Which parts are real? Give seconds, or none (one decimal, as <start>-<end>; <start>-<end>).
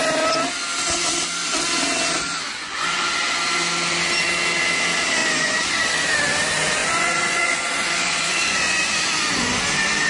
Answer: 0.0-2.6; 3.4-5.2; 5.8-6.8; 9.6-10.1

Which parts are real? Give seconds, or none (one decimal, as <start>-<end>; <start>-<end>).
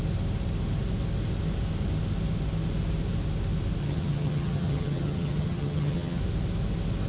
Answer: 0.0-3.8; 6.2-7.1